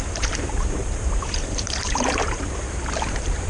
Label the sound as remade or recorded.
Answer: remade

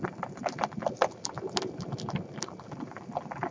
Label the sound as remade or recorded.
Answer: recorded